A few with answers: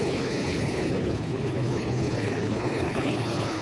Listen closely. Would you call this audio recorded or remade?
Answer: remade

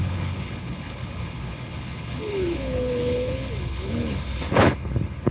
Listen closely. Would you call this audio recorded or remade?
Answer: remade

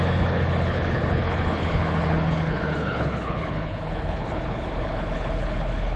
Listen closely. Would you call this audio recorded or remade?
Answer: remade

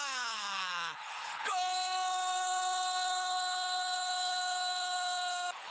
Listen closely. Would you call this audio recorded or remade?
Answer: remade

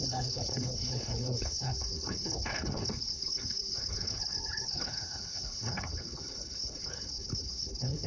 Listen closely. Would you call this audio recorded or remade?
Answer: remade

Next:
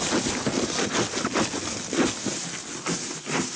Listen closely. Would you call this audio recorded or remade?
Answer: recorded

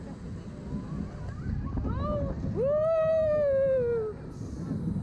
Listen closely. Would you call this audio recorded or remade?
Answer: recorded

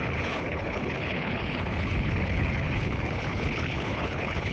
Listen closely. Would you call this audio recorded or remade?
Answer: remade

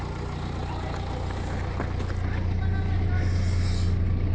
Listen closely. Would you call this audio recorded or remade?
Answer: recorded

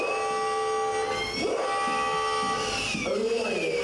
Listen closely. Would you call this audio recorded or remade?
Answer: recorded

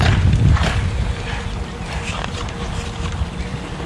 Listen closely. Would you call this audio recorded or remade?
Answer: recorded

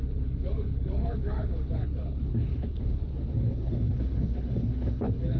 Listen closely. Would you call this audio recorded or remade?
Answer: remade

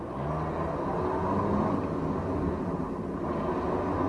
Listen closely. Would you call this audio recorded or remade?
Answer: recorded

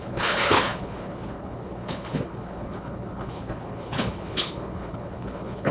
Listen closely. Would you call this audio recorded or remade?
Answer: remade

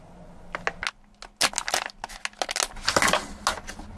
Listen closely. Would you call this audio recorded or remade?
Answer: recorded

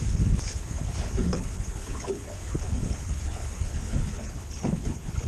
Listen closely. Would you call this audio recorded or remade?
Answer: remade